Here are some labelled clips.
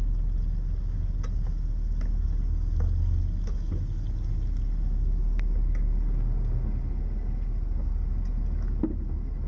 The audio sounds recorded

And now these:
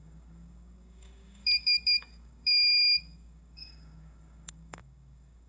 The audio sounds remade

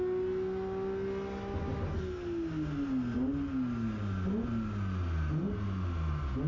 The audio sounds recorded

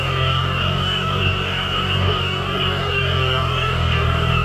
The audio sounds remade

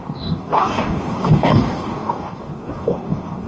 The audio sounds remade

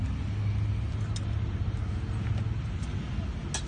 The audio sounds recorded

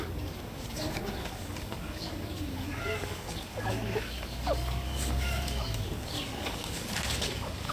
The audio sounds remade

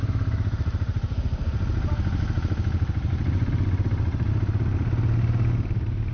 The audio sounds recorded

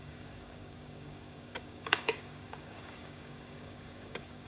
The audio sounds remade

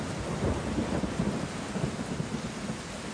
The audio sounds recorded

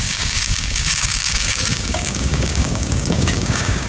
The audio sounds remade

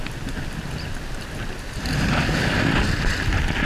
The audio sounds recorded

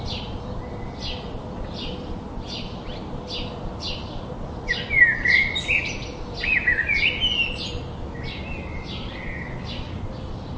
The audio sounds recorded